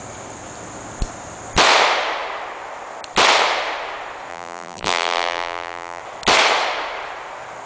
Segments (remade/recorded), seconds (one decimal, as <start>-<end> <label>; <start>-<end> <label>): 0.0-4.3 recorded; 4.3-6.0 remade; 6.0-7.7 recorded

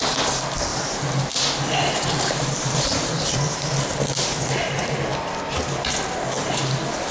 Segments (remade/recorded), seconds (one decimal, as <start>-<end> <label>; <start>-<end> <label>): 0.0-0.7 recorded; 0.7-1.3 remade; 1.3-2.1 recorded; 2.1-3.6 remade; 3.6-7.1 recorded

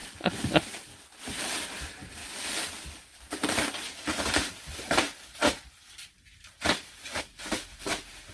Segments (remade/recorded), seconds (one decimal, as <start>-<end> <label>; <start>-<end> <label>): 0.0-2.2 recorded; 2.2-7.2 remade; 7.2-8.3 recorded

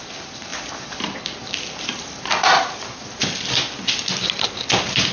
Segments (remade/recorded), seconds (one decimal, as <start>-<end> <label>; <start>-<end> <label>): 0.0-0.5 recorded; 0.5-2.3 remade; 2.3-5.1 recorded